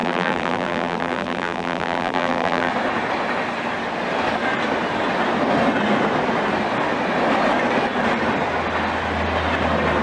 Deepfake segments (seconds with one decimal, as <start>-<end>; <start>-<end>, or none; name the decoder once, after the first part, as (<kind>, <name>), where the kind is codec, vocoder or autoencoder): 0.0-2.7 (vocoder, BigVGAN v2)